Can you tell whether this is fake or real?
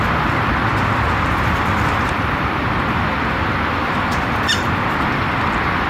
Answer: fake